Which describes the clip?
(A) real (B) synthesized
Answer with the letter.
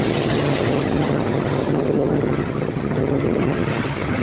B